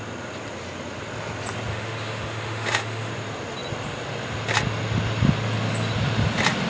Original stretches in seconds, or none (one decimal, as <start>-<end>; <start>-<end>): 0.0-1.7; 3.1-6.7